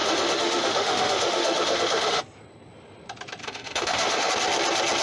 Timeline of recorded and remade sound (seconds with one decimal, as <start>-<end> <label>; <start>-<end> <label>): 0.0-2.2 remade; 2.2-3.4 recorded; 3.4-4.3 remade; 4.3-5.0 recorded